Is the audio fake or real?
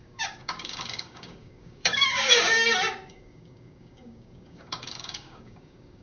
fake